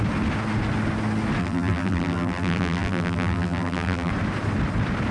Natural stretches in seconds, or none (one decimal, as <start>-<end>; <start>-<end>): 0.0-1.4; 4.1-5.1